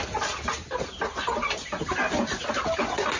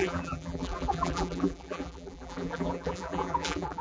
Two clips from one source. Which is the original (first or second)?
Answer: first